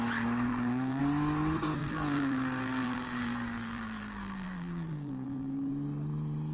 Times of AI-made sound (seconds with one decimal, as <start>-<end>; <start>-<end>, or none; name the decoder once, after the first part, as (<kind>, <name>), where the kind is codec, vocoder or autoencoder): 0.5-1.0 (vocoder, BigVGAN v2); 1.8-5.7